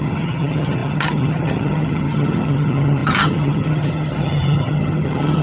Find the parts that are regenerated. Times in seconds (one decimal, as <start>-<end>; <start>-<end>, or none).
0.0-5.4